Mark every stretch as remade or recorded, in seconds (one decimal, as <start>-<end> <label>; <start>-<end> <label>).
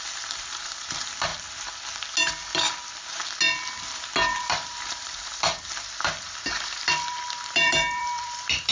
0.0-1.3 remade; 1.3-4.4 recorded; 4.4-8.7 remade